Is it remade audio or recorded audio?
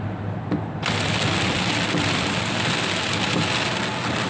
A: recorded